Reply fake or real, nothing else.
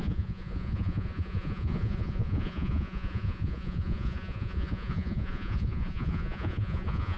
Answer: fake